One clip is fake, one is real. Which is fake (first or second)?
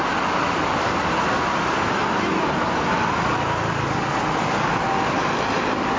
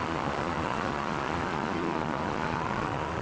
second